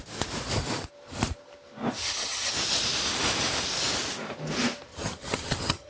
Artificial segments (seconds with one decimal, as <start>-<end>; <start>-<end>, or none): 2.0-2.5; 4.9-5.9